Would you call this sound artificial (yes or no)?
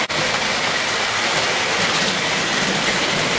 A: no